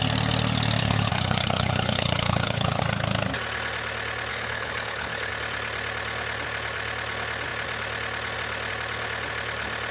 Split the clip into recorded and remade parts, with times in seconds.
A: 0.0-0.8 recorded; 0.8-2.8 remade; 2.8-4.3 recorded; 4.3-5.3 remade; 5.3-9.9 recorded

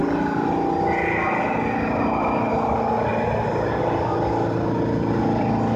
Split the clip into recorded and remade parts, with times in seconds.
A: 0.0-2.5 recorded; 2.5-3.1 remade; 3.1-3.8 recorded; 3.8-5.8 remade

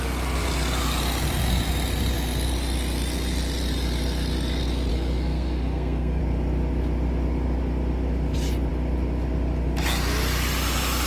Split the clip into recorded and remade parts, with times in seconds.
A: 0.0-4.9 recorded; 4.9-6.2 remade; 6.2-11.1 recorded

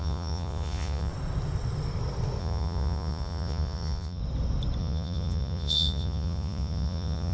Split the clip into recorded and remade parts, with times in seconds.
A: 0.0-1.1 remade; 1.1-2.4 recorded; 2.4-4.2 remade; 4.2-4.8 recorded; 4.8-7.3 remade

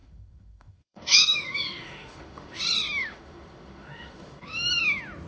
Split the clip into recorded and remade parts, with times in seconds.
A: 0.0-2.6 remade; 2.6-3.0 recorded; 3.0-4.7 remade; 4.7-5.3 recorded